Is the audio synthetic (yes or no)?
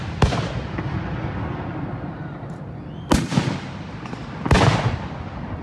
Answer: no